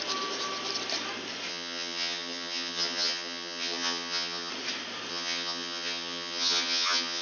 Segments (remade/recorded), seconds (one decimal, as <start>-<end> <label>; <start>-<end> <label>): 0.0-1.5 recorded; 1.5-4.5 remade; 4.5-5.1 recorded; 5.1-7.2 remade